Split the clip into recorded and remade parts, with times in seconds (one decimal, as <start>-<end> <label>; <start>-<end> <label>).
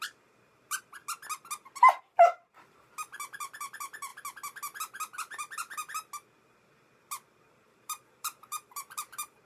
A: 0.0-1.0 remade; 1.0-2.0 recorded; 2.0-4.1 remade; 4.1-7.5 recorded; 7.5-9.5 remade